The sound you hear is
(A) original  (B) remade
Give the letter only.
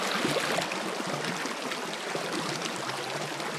A